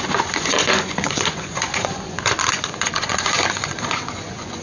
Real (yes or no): no